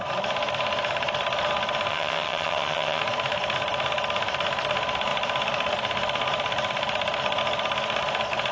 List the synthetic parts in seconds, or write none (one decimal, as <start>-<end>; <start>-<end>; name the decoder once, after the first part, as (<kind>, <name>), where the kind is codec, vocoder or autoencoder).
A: 1.9-3.0 (vocoder, HiFi-GAN)